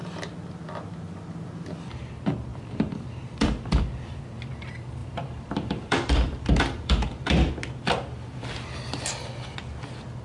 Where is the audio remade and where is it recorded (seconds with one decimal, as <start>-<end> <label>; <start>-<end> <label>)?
0.0-2.5 recorded; 2.5-4.2 remade; 4.2-5.0 recorded; 5.0-7.5 remade; 7.5-10.2 recorded